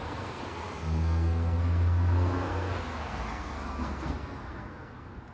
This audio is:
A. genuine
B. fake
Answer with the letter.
B